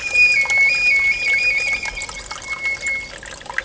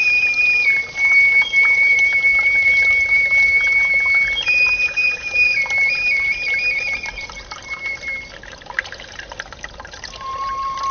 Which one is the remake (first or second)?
second